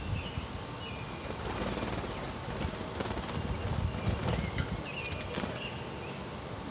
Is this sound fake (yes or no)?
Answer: no